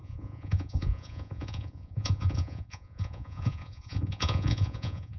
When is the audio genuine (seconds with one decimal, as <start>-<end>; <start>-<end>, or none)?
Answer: none